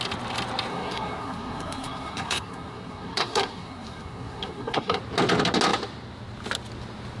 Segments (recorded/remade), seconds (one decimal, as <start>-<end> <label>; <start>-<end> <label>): 0.0-0.7 recorded; 0.7-5.0 remade; 5.0-7.2 recorded